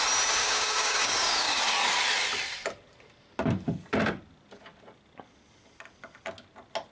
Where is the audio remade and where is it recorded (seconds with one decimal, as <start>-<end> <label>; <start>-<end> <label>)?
0.0-0.4 recorded; 0.4-1.6 remade; 1.6-6.9 recorded